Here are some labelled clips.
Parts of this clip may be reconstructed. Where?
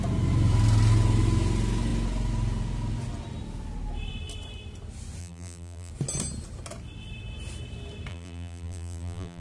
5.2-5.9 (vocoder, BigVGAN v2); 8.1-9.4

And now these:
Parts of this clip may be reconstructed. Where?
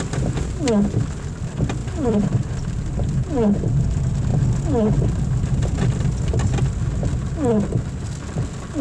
1.8-3.1 (vocoder, BigVGAN v2)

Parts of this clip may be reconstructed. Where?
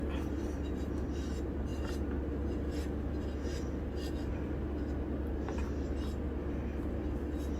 none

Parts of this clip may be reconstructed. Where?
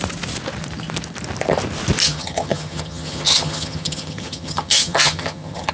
2.0-5.7 (vocoder, HiFi-GAN)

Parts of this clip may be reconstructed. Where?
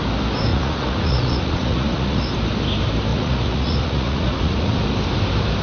0.5-2.3 (vocoder, Vocos); 3.1-4.8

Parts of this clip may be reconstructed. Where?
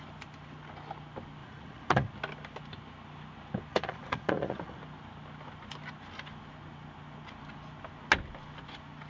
1.4-2.1 (vocoder, Vocos); 3.7-4.8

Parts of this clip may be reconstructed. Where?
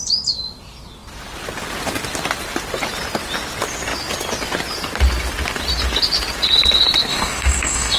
7.1-8.0 (codec, DAC)